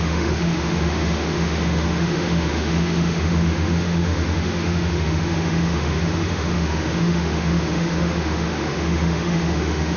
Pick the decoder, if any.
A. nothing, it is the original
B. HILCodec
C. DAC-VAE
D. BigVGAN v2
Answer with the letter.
C